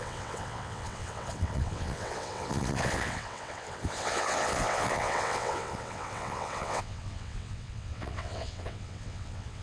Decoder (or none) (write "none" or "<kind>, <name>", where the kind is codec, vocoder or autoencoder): vocoder, WaveNeXt